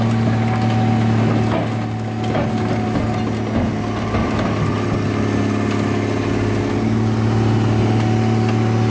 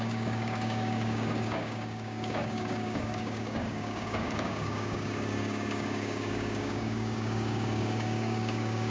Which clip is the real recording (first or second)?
first